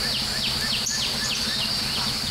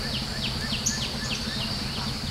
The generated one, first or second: second